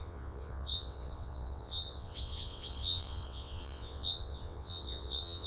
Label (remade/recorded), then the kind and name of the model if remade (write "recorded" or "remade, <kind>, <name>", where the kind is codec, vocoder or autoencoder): remade, vocoder, WaveNeXt